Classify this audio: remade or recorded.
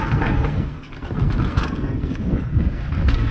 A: remade